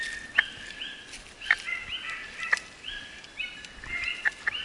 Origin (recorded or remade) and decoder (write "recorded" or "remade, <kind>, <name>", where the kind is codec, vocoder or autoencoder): recorded